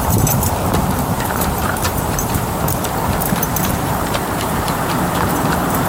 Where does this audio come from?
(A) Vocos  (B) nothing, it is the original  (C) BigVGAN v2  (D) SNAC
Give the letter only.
C